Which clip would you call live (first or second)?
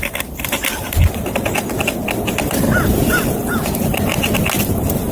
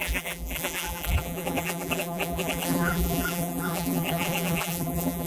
first